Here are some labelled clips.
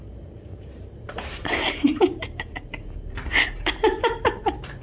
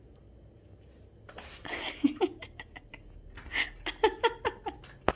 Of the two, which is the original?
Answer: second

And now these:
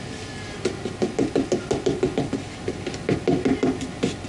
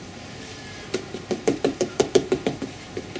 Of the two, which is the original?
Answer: first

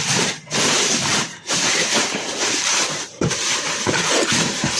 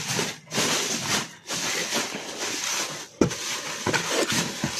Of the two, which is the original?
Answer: second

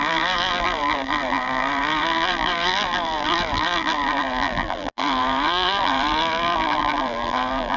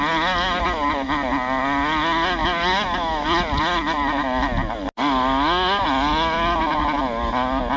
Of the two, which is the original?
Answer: second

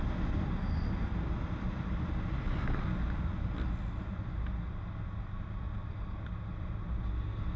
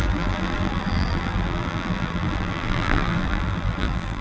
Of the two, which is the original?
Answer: first